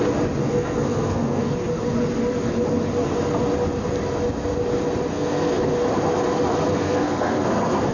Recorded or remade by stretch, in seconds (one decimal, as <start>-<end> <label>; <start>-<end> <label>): 0.0-0.4 recorded; 0.4-1.5 remade; 1.5-5.1 recorded; 5.1-5.6 remade; 5.6-6.7 recorded; 6.7-7.9 remade

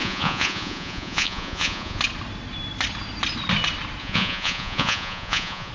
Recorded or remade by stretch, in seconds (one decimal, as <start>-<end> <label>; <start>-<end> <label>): 0.0-2.0 remade; 2.0-4.0 recorded; 4.0-5.7 remade

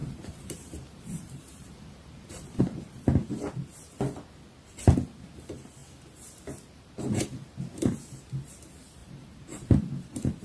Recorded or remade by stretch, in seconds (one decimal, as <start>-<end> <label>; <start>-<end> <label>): 0.0-2.6 remade; 2.6-9.0 recorded; 9.0-9.8 remade; 9.8-10.4 recorded

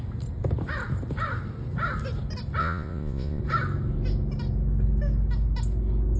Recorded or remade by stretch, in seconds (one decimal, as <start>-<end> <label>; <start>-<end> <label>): 0.0-2.6 recorded; 2.6-3.4 remade; 3.4-6.2 recorded

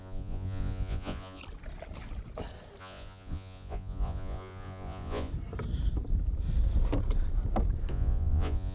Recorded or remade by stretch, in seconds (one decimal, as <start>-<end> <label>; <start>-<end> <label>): 0.0-1.4 remade; 1.4-2.8 recorded; 2.8-5.3 remade; 5.3-7.9 recorded; 7.9-8.7 remade

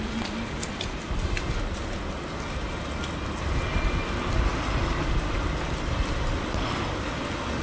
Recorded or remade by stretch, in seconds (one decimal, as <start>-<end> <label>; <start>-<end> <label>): 0.0-7.6 recorded

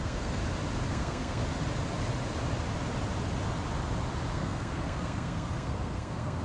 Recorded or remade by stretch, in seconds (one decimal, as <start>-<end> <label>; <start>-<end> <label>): 0.0-0.4 remade; 0.4-0.9 recorded; 0.9-1.4 remade; 1.4-4.3 recorded; 4.3-6.4 remade